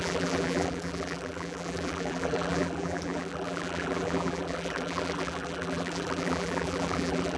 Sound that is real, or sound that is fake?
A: fake